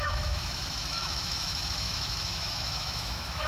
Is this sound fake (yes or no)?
yes